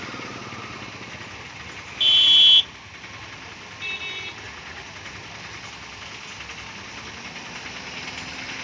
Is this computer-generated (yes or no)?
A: no